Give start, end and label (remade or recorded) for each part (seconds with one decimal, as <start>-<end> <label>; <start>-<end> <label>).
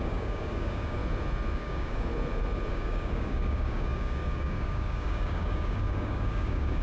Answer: 0.0-1.0 remade; 1.0-1.5 recorded; 1.5-2.1 remade; 2.1-2.7 recorded; 2.7-6.8 remade